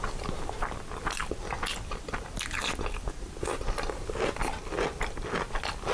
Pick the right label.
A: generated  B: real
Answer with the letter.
B